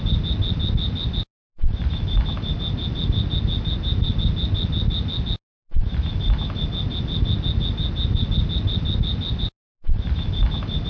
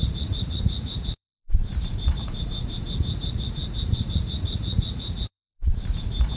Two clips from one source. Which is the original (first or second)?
first